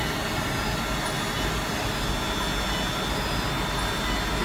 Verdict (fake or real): real